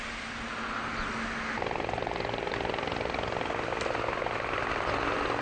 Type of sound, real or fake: real